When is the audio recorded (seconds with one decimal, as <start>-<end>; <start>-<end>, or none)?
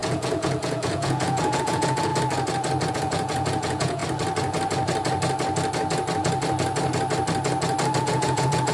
2.1-2.9; 4.0-8.0